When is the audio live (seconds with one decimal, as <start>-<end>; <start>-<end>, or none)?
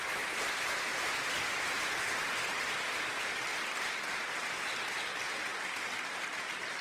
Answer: 0.0-6.8